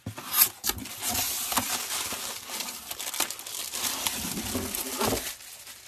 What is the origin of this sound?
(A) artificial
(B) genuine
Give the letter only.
B